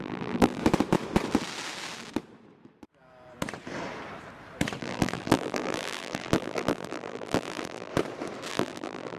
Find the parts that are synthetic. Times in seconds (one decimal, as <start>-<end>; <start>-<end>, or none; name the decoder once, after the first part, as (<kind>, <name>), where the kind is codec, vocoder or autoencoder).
0.0-0.6 (vocoder, BigVGAN v2); 4.8-7.9; 8.5-9.2